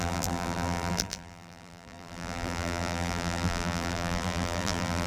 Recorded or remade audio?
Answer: remade